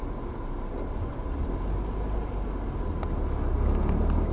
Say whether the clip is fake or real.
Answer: real